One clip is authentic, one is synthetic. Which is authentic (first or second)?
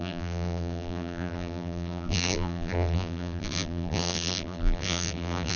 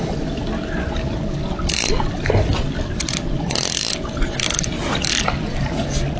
second